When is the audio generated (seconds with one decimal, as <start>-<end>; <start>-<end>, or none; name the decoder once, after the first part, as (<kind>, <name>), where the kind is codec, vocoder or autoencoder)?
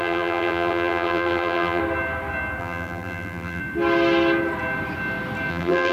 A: 0.0-1.8 (vocoder, BigVGAN v2); 2.6-3.6; 5.5-5.9